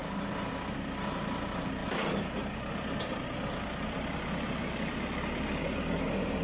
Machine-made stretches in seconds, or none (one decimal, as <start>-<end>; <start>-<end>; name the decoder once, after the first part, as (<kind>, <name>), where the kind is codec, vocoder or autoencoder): none